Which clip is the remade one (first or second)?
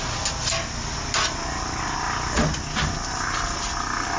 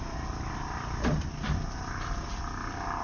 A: second